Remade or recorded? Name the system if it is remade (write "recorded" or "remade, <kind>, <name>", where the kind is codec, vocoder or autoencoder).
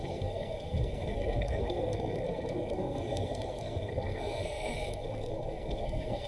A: remade, codec, SNAC